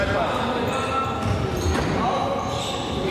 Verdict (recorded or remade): recorded